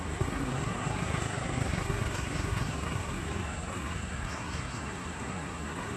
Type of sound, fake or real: fake